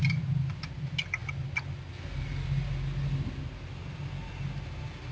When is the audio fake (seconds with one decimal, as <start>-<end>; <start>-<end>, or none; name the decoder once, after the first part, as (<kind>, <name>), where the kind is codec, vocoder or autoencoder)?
none